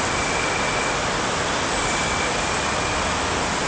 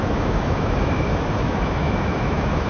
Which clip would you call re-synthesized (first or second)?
second